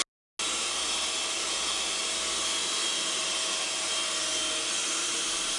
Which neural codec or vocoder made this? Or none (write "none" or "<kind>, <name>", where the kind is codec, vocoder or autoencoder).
none